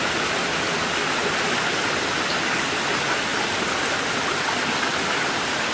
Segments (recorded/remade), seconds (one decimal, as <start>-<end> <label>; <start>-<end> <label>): 0.0-3.3 recorded; 3.3-5.7 remade